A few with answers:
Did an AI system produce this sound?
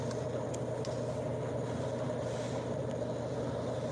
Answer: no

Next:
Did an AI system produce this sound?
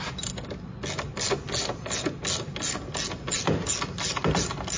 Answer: no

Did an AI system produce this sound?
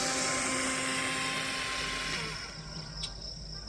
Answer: no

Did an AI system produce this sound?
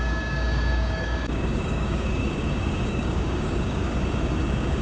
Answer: yes